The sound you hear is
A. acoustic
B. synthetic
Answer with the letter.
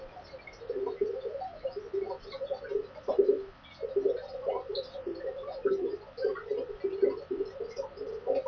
A